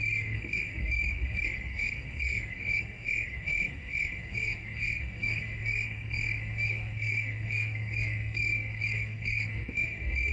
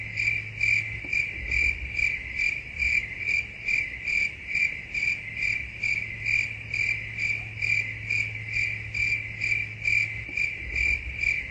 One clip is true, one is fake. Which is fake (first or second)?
first